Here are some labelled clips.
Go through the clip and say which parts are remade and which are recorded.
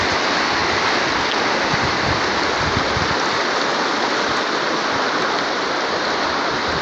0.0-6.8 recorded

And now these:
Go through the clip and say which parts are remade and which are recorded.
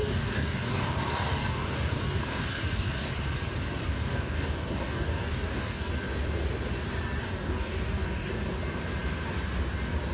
0.0-3.1 remade; 3.1-3.9 recorded; 3.9-5.9 remade; 5.9-7.2 recorded; 7.2-8.3 remade; 8.3-10.1 recorded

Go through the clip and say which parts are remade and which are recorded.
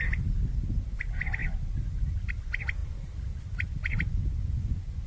0.0-5.1 recorded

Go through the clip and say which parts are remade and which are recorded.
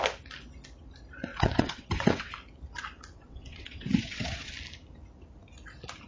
0.0-1.3 recorded; 1.3-2.3 remade; 2.3-3.1 recorded; 3.1-4.5 remade; 4.5-6.1 recorded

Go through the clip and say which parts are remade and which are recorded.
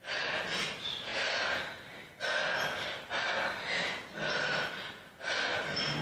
0.0-6.0 recorded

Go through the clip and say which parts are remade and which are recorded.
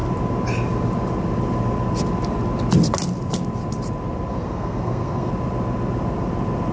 0.0-4.3 recorded; 4.3-5.3 remade; 5.3-6.7 recorded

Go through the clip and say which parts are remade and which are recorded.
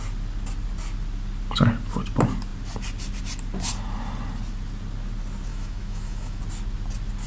0.0-5.5 recorded; 5.5-6.4 remade; 6.4-7.3 recorded